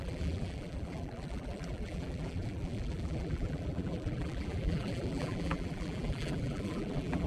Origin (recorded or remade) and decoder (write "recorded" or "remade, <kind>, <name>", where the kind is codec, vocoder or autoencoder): remade, vocoder, BigVGAN v2